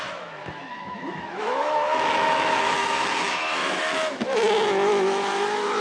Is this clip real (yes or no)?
no